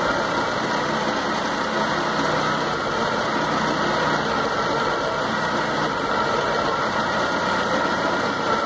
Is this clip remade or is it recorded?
recorded